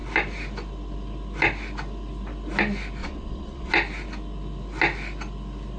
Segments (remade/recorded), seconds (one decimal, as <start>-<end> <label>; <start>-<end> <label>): 0.0-3.0 recorded; 3.0-3.7 remade; 3.7-5.8 recorded